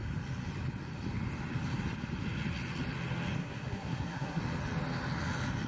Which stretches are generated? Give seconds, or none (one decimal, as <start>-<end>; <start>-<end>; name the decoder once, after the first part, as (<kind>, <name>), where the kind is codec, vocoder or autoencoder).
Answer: 3.4-4.4 (codec, SNAC)